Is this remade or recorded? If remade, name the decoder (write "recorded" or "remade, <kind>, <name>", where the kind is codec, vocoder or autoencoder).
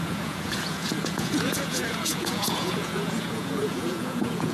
remade, vocoder, Vocos